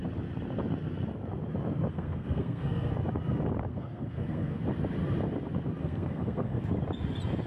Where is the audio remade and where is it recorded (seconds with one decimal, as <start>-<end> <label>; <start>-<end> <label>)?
0.0-1.9 recorded; 1.9-2.9 remade; 2.9-3.7 recorded; 3.7-4.6 remade; 4.6-5.8 recorded; 5.8-6.6 remade; 6.6-7.5 recorded